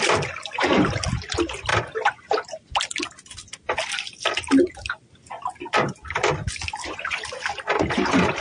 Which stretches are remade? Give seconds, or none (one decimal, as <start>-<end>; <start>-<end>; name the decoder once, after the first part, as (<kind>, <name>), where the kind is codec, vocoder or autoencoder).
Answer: none